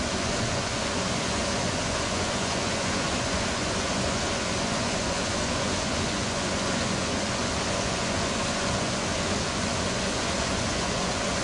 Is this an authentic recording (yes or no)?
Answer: no